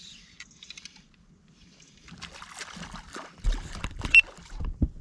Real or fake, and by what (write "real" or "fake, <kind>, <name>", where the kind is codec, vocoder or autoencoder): fake, vocoder, BigVGAN v2